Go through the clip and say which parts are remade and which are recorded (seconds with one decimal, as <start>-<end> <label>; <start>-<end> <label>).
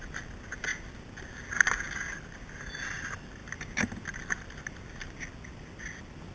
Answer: 0.0-6.3 recorded